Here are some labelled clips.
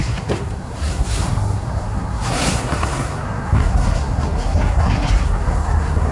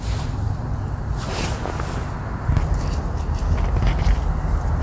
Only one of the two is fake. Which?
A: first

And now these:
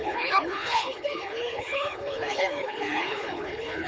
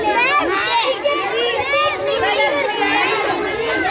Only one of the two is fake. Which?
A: first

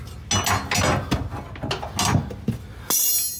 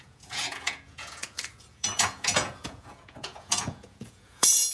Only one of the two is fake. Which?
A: second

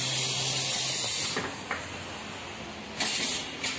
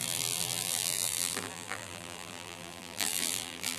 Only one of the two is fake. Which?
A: second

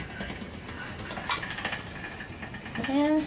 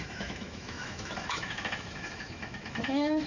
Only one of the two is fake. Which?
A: second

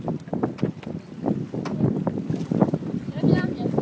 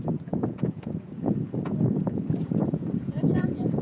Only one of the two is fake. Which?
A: second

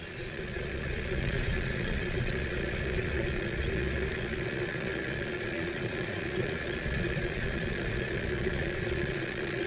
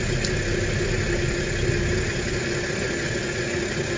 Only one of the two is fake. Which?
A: first